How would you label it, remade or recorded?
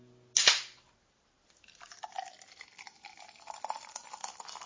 recorded